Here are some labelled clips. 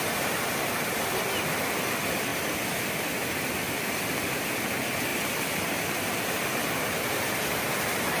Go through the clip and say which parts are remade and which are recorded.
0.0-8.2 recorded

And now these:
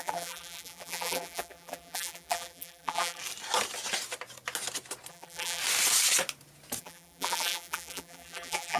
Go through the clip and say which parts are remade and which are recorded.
0.0-3.2 remade; 3.2-5.1 recorded; 5.1-5.6 remade; 5.6-6.8 recorded; 6.8-8.8 remade

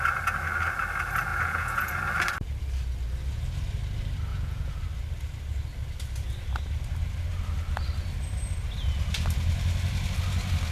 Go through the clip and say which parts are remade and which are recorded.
0.0-1.3 recorded; 1.3-1.9 remade; 1.9-4.3 recorded; 4.3-4.8 remade; 4.8-10.7 recorded

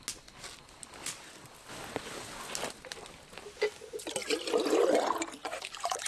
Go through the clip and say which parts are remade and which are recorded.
0.0-5.4 recorded; 5.4-6.1 remade

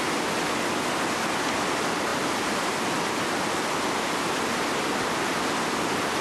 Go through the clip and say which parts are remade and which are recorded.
0.0-6.2 recorded

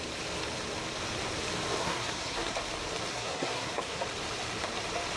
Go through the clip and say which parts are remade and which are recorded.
0.0-1.8 recorded; 1.8-2.6 remade; 2.6-3.1 recorded; 3.1-4.0 remade; 4.0-5.2 recorded

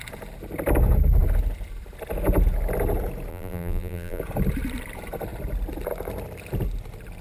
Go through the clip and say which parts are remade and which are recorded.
0.0-3.3 recorded; 3.3-4.2 remade; 4.2-7.2 recorded

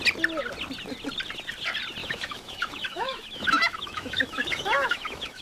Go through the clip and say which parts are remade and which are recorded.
0.0-2.0 recorded; 2.0-5.4 remade